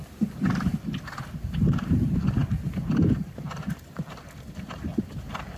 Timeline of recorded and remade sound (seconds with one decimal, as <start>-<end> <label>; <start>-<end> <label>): 0.0-5.6 recorded